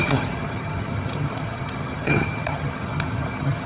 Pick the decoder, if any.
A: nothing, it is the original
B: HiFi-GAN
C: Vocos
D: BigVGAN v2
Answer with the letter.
B